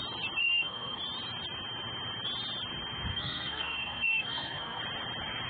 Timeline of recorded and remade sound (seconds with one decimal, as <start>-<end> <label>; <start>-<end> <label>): 0.0-0.4 recorded; 0.4-1.0 remade; 1.0-3.1 recorded; 3.1-4.8 remade; 4.8-5.5 recorded